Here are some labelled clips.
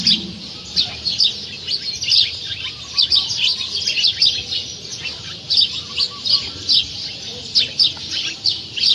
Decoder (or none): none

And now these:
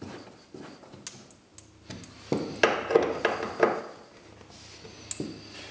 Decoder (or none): none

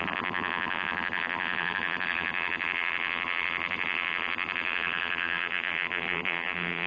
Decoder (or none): vocoder, BigVGAN v2